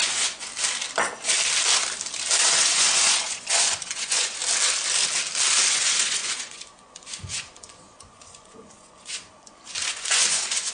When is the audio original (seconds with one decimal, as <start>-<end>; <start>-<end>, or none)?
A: 0.5-2.5; 4.4-5.7